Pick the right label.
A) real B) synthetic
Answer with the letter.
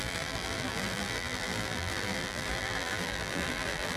B